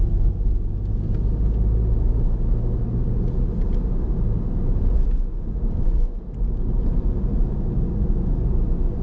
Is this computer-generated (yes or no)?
no